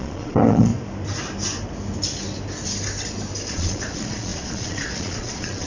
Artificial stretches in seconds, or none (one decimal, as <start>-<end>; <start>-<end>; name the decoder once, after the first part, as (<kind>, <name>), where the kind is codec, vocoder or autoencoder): 0.0-0.7 (vocoder, Vocos); 3.5-5.7